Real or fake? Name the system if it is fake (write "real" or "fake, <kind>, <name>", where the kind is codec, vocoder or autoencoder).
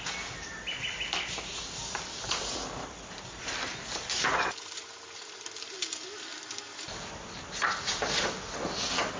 real